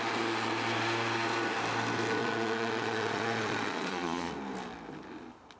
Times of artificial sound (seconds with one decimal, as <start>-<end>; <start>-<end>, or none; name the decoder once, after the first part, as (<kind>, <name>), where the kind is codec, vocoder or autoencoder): 2.2-4.3 (vocoder, Vocos)